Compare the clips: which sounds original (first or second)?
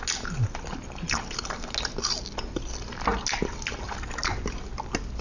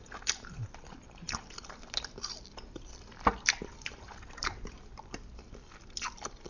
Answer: first